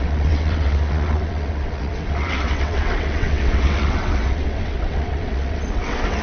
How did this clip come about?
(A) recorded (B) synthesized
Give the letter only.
B